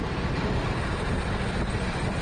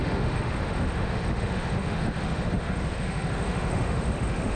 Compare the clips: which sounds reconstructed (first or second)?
second